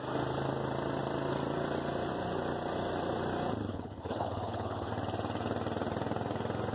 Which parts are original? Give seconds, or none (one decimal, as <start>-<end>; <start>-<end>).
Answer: 0.0-3.7; 4.9-6.7